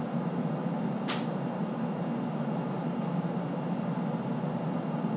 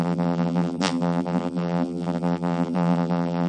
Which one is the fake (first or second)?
second